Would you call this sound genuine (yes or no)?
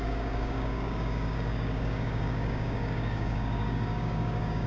no